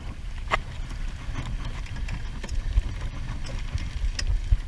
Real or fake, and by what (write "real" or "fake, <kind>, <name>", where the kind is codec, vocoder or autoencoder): real